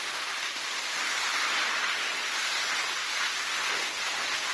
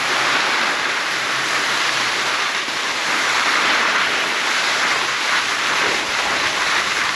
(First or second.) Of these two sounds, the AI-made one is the second